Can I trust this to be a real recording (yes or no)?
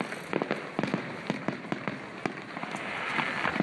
yes